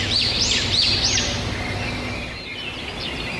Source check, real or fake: real